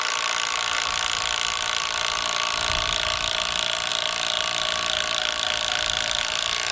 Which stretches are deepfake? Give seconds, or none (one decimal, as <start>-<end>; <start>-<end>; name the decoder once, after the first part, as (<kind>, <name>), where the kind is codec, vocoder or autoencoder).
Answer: 0.0-6.7 (vocoder, BigVGAN v2)